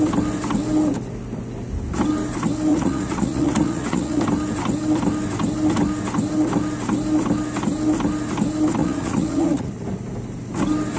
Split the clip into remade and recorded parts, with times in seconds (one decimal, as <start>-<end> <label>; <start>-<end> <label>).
0.0-2.7 recorded; 2.7-4.2 remade; 4.2-8.8 recorded; 8.8-9.7 remade; 9.7-11.0 recorded